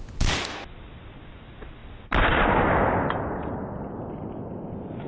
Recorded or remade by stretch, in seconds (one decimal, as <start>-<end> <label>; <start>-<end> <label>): 0.0-5.1 recorded